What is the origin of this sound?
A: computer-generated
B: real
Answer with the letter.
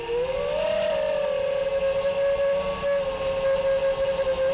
B